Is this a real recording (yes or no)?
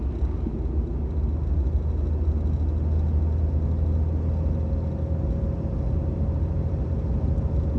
yes